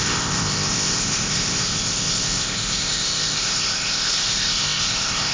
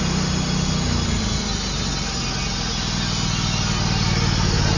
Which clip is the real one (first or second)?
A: second